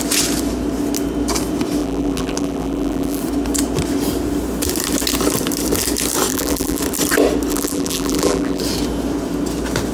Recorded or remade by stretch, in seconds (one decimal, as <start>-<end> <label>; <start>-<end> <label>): 0.0-1.8 recorded; 1.8-3.2 remade; 3.2-6.3 recorded; 6.3-6.8 remade; 6.8-7.5 recorded; 7.5-8.6 remade; 8.6-9.9 recorded